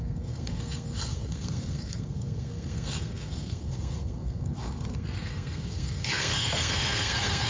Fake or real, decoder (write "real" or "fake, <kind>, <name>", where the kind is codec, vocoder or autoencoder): fake, codec, SNAC